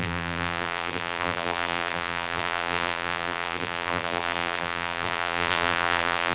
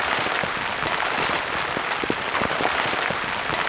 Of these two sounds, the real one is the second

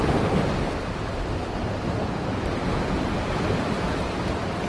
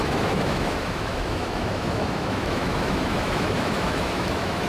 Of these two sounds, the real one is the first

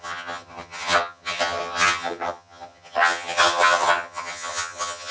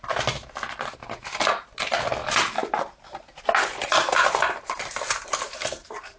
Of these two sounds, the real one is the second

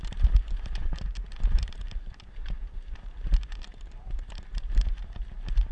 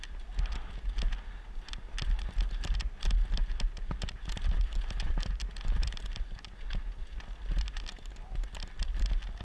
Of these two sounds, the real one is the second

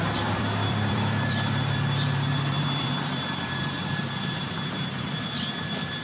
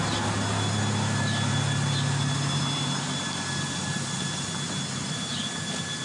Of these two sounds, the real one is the second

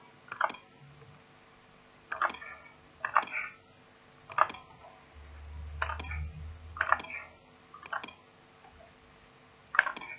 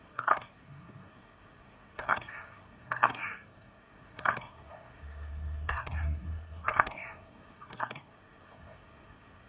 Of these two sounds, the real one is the first